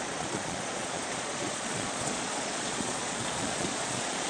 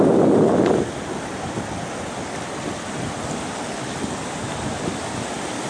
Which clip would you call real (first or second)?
second